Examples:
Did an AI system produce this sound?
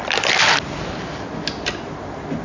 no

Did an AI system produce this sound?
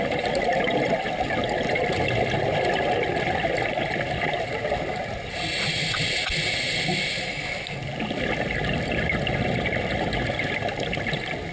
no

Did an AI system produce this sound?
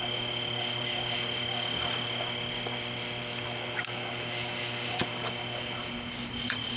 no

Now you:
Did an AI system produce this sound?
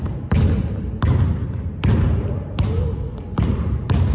no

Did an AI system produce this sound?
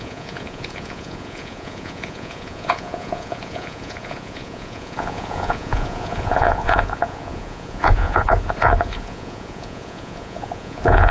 yes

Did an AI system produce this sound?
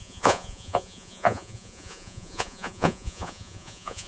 yes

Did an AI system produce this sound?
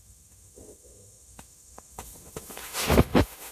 yes